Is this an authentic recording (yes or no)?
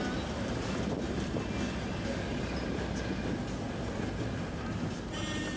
yes